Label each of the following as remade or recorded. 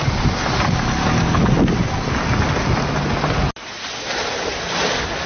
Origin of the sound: recorded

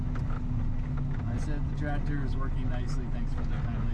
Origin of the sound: recorded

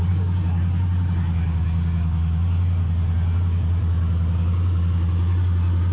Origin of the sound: recorded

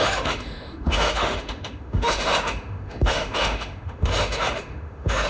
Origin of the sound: remade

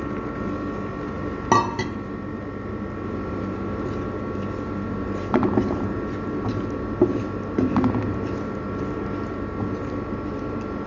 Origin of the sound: recorded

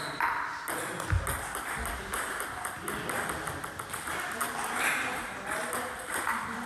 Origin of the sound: recorded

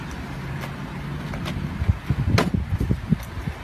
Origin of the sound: recorded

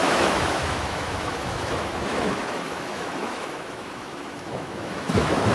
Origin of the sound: remade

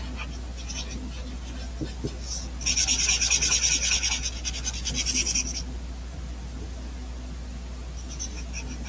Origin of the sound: recorded